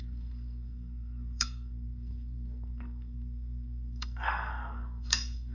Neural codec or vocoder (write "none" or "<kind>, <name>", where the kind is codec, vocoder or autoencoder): codec, SNAC